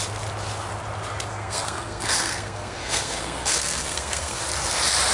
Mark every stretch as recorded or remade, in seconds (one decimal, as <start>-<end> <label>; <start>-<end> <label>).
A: 0.0-1.3 recorded; 1.3-4.4 remade; 4.4-5.1 recorded